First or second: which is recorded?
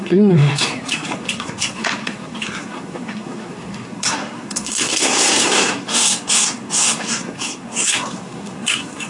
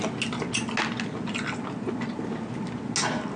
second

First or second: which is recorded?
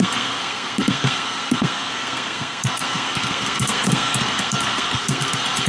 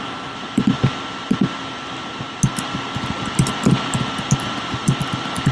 second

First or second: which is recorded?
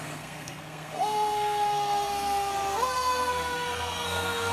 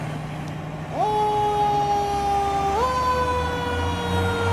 second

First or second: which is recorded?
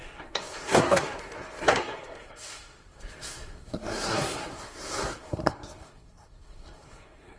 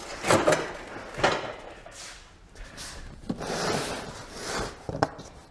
second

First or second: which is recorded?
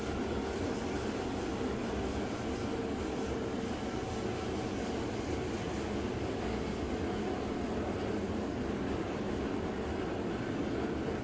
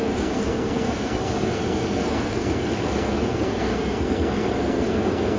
first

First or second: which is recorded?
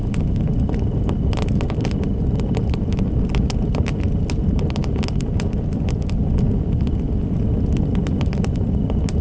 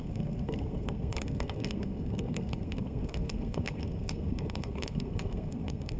first